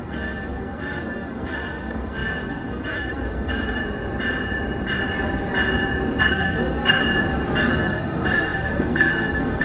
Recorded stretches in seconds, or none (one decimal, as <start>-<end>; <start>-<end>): 3.8-6.2; 7.0-7.6